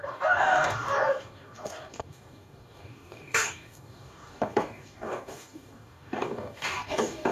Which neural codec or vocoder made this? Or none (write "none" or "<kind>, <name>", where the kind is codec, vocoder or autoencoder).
codec, DAC